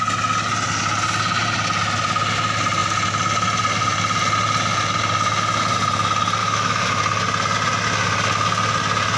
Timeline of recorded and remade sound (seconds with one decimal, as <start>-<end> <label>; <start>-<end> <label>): 0.0-6.4 recorded; 6.4-7.0 remade; 7.0-9.2 recorded